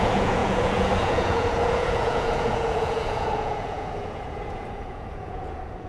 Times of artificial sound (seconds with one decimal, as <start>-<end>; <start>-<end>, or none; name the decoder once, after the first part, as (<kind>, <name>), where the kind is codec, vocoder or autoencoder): 0.0-5.9 (vocoder, Vocos)